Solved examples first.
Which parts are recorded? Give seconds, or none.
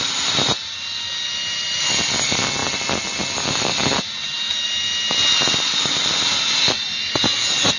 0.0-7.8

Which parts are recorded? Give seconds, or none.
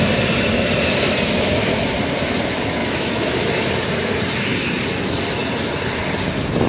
0.0-2.8; 3.7-6.7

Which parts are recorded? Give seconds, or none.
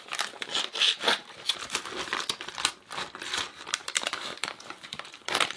0.0-1.2; 1.8-3.8